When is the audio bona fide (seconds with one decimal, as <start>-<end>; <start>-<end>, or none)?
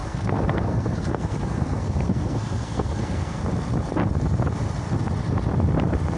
3.4-6.2